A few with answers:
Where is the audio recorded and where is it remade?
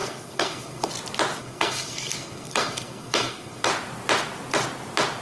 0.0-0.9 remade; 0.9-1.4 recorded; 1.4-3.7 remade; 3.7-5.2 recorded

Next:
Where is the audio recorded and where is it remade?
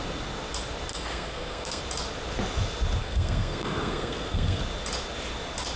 0.0-0.9 recorded; 0.9-1.8 remade; 1.8-3.0 recorded; 3.0-4.6 remade; 4.6-5.8 recorded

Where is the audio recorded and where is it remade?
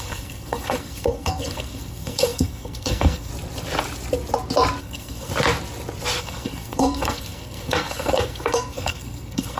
0.0-3.3 remade; 3.3-4.8 recorded; 4.8-5.3 remade; 5.3-6.2 recorded; 6.2-9.6 remade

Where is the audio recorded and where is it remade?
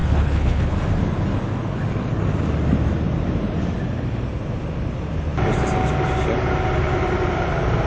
0.0-0.7 remade; 0.7-7.9 recorded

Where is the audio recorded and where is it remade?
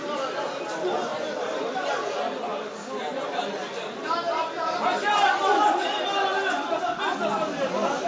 0.0-8.1 recorded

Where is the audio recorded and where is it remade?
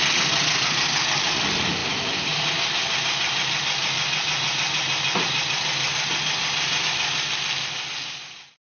0.0-8.6 recorded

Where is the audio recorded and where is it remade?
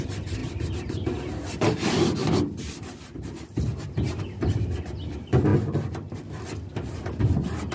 0.0-7.7 recorded